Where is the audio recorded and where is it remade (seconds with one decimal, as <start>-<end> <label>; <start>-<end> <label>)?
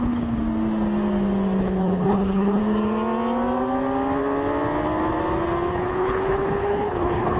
0.0-0.4 remade; 0.4-1.6 recorded; 1.6-2.6 remade; 2.6-5.7 recorded; 5.7-7.4 remade